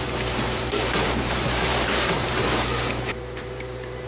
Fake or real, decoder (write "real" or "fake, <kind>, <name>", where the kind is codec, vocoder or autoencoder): fake, vocoder, BigVGAN v2